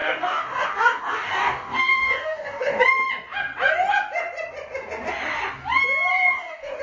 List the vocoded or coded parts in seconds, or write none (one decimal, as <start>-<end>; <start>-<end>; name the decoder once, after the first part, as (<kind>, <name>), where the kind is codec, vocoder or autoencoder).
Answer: 0.0-2.8 (codec, DAC); 6.1-6.8